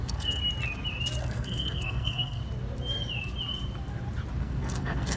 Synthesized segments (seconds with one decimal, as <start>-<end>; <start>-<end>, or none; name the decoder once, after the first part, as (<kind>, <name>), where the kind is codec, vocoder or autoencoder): 0.0-0.4 (codec, SNAC); 1.2-2.4; 4.4-5.2